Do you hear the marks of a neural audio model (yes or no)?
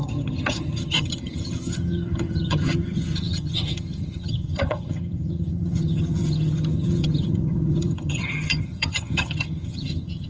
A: yes